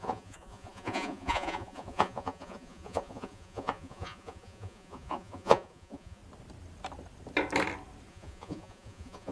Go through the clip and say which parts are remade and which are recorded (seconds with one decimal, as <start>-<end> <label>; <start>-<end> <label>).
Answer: 0.0-6.2 remade; 6.2-8.1 recorded; 8.1-9.3 remade